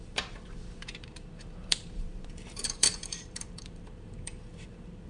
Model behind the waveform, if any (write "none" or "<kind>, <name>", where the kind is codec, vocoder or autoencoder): vocoder, BigVGAN v2